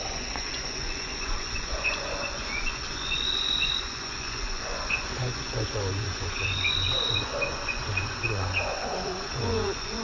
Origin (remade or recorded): remade